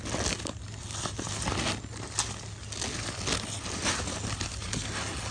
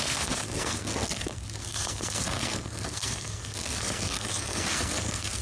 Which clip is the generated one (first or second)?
second